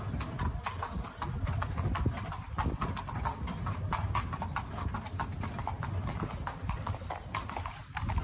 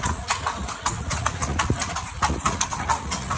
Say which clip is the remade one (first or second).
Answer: second